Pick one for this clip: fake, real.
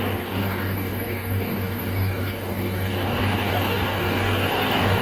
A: fake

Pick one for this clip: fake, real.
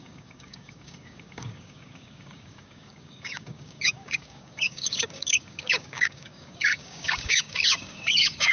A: fake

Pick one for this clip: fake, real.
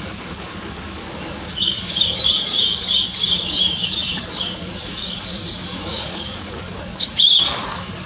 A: fake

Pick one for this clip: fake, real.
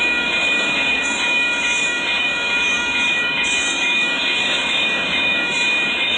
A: fake